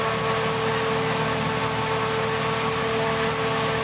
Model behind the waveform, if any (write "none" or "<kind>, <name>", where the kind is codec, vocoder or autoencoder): none